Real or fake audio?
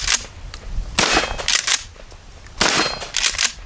real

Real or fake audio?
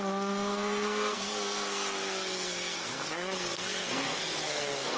fake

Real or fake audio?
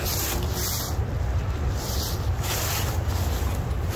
real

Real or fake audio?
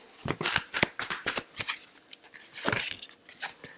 real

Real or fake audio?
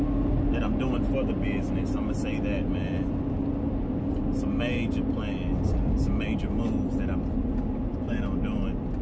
real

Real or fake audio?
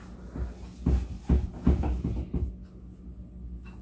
real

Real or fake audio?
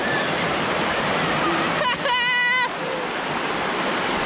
real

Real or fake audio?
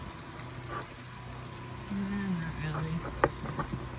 real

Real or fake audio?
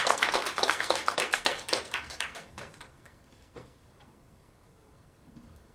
fake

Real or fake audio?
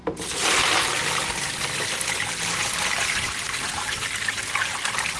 real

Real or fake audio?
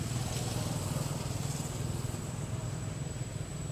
real